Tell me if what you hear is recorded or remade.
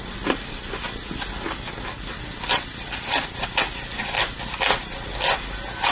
recorded